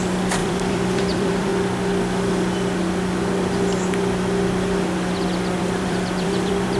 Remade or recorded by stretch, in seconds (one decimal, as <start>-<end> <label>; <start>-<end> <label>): 0.0-1.5 remade; 1.5-5.6 recorded; 5.6-6.8 remade